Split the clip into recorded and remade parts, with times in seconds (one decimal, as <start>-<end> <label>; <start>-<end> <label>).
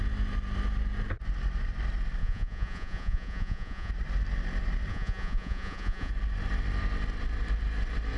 0.0-2.2 recorded; 2.2-3.9 remade; 3.9-4.9 recorded; 4.9-6.1 remade; 6.1-8.2 recorded